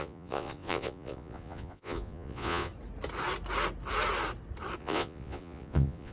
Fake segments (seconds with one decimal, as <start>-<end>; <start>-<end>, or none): 0.0-2.7; 4.8-6.1